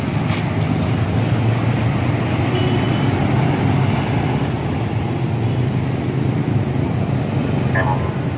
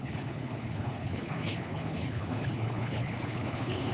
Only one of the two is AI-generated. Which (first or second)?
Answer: second